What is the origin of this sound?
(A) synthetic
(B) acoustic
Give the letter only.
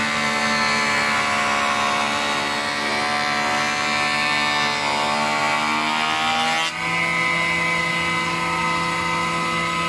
B